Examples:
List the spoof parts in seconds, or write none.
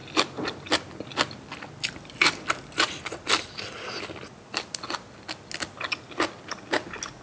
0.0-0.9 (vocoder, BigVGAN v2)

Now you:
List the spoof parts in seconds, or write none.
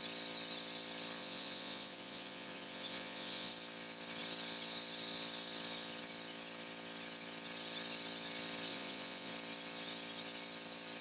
1.2-3.5 (vocoder, Vocos); 8.7-9.3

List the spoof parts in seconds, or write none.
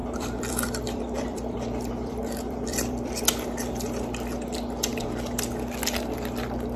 0.0-3.2 (vocoder, BigVGAN v2)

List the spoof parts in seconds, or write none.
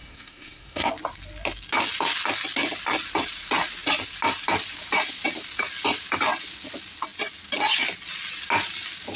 0.0-0.9 (codec, SNAC)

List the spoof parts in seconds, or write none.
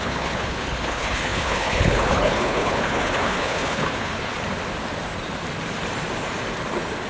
0.0-4.3 (codec, HILCodec)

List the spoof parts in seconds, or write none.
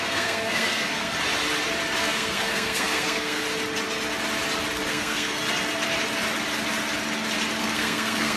0.0-1.1 (codec, SNAC); 2.0-3.4; 4.9-5.4; 7.6-8.4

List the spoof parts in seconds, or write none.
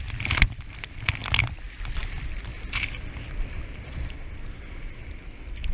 none